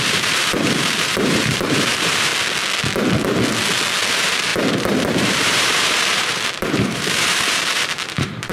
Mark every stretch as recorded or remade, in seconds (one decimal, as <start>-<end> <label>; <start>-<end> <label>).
0.0-2.3 remade; 2.3-4.1 recorded; 4.1-8.5 remade